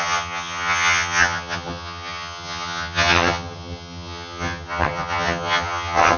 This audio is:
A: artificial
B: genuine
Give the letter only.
A